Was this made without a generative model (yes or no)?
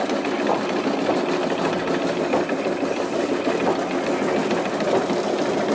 yes